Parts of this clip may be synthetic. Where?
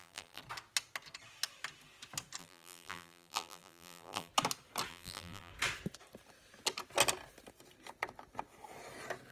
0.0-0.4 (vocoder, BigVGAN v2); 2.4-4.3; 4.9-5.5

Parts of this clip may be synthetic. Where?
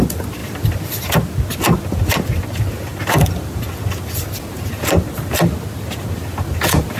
0.4-1.0 (vocoder, BigVGAN v2)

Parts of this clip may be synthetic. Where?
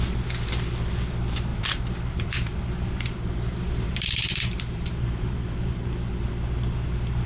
1.5-5.9 (vocoder, BigVGAN v2)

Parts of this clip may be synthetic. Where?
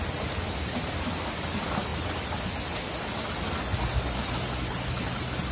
none